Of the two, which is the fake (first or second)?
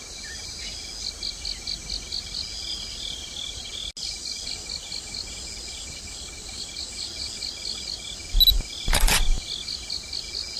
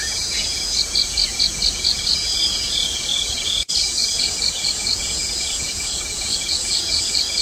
second